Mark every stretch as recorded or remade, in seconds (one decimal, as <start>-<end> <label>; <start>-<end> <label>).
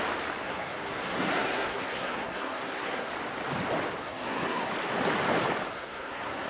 0.0-0.4 recorded; 0.4-3.1 remade; 3.1-4.0 recorded; 4.0-4.7 remade; 4.7-5.7 recorded; 5.7-6.5 remade